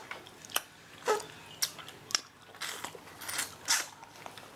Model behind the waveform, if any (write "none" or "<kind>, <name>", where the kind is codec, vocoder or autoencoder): none